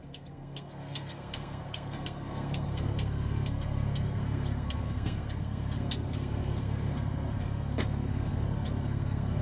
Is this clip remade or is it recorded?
remade